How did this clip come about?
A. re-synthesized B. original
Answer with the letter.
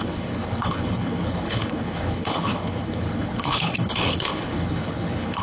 A